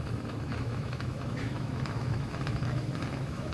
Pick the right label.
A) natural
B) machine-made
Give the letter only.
B